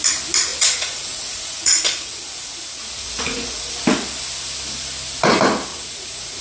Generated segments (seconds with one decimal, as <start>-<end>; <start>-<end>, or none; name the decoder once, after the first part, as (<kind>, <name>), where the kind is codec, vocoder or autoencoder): 0.5-3.7 (vocoder, Vocos); 5.7-6.4